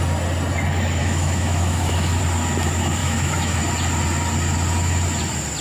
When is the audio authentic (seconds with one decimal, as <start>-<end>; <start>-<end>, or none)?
0.0-1.0; 2.2-3.0; 3.6-5.6